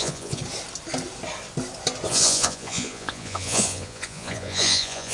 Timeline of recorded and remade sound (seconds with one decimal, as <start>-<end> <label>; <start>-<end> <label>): 0.0-0.4 remade; 0.4-2.1 recorded; 2.1-5.1 remade